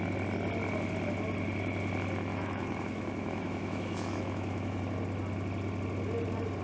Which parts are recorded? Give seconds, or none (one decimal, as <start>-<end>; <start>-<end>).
0.0-2.3; 4.8-6.6